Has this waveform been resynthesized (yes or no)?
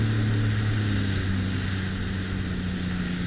no